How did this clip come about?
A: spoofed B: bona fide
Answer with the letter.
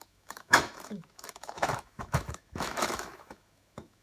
A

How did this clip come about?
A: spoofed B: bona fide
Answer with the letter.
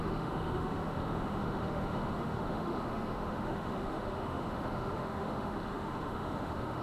A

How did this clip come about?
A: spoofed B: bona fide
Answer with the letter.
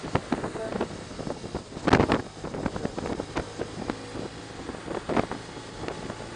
B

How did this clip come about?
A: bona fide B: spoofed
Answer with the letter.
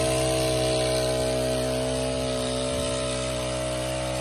A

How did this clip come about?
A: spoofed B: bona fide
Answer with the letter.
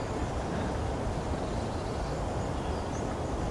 B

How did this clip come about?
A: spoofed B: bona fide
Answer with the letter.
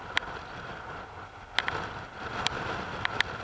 B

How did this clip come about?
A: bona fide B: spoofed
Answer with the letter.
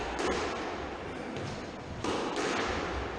A